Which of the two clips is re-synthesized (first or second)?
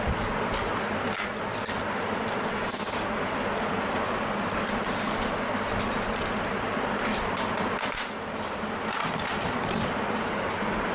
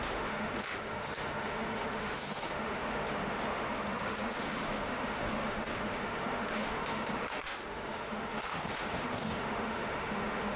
second